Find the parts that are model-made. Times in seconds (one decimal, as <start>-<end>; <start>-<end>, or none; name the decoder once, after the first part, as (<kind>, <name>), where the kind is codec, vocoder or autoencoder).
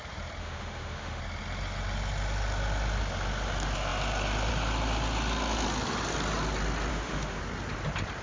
0.4-1.2 (autoencoder, DAC-VAE); 6.9-7.4